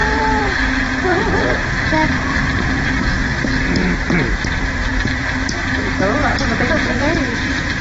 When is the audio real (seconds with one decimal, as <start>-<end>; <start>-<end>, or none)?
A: 3.5-4.9; 5.5-6.2